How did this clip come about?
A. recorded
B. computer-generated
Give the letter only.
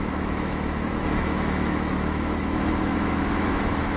B